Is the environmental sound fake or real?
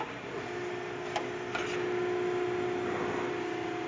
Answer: real